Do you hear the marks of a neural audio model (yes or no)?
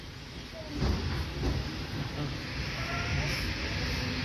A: no